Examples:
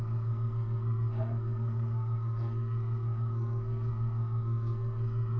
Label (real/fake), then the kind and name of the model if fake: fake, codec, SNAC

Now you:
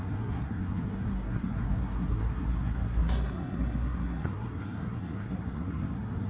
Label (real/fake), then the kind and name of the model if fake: fake, codec, SNAC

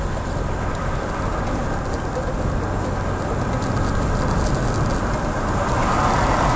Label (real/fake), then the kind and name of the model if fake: real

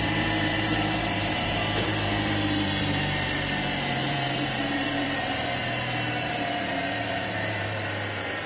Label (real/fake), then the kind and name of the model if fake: fake, vocoder, BigVGAN v2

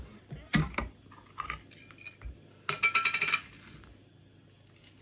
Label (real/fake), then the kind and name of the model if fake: real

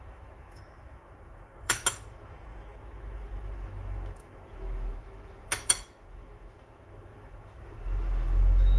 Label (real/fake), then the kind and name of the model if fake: fake, autoencoder, DAC-VAE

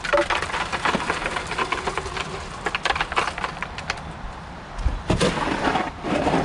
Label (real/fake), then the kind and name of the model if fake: real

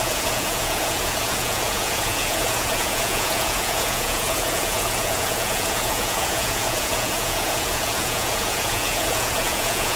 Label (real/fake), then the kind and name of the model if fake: fake, vocoder, Vocos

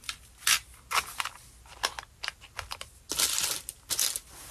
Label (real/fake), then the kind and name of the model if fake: real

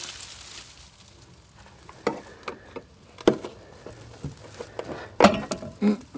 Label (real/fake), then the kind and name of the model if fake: real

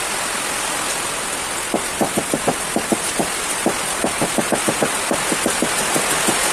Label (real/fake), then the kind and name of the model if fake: real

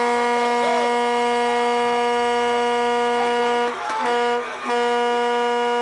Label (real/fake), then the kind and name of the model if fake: fake, autoencoder, DAC-VAE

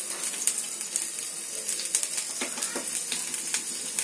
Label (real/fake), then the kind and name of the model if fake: real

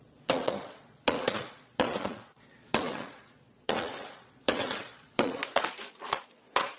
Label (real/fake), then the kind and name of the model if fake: fake, vocoder, Vocos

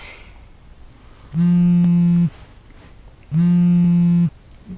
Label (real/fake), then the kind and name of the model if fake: real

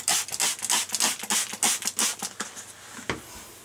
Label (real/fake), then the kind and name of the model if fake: real